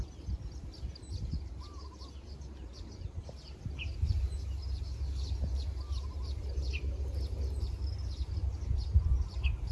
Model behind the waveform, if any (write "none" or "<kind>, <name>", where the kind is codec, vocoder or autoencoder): none